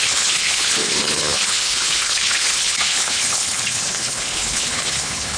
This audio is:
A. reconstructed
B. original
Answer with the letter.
A